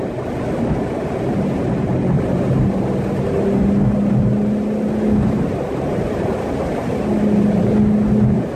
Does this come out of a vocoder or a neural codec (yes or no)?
no